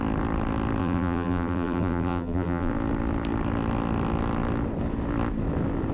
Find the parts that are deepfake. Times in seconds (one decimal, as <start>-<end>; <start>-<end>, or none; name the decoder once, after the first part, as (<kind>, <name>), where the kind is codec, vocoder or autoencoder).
0.8-2.7 (vocoder, BigVGAN v2)

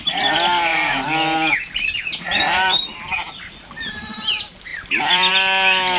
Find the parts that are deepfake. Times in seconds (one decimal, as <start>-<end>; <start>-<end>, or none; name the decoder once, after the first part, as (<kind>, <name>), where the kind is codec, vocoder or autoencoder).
0.7-4.3 (vocoder, BigVGAN v2); 4.7-5.3